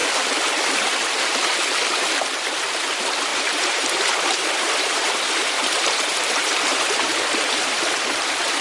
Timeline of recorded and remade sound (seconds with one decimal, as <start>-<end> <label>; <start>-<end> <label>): 0.0-3.3 recorded; 3.3-7.8 remade; 7.8-8.6 recorded